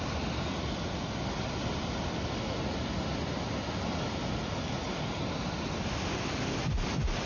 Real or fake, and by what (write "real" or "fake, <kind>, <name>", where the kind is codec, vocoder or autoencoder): real